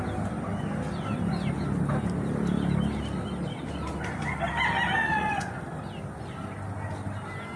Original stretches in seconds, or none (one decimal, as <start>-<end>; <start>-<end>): 0.0-5.0; 5.6-7.6